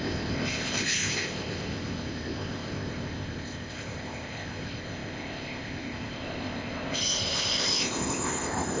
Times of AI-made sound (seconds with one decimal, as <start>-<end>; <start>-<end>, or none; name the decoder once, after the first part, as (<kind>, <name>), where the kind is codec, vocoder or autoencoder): 0.0-8.8 (codec, ZipCodec)